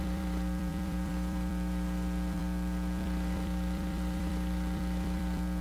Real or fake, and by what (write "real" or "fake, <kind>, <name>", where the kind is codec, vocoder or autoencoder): fake, vocoder, BigVGAN v2